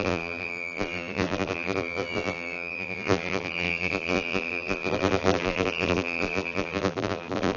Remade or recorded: remade